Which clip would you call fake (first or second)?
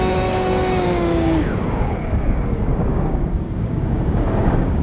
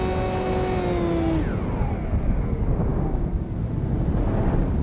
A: first